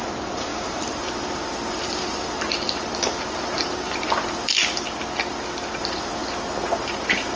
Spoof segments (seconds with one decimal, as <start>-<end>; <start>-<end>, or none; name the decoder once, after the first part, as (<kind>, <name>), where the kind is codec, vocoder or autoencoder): 0.0-4.6 (vocoder, BigVGAN v2); 5.8-6.2; 6.8-7.4